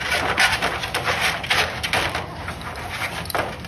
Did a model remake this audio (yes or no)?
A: no